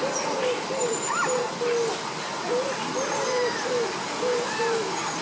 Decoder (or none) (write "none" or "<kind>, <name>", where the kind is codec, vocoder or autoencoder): none